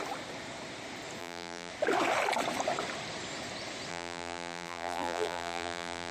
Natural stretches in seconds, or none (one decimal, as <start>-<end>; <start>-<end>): 0.0-1.2; 1.7-3.9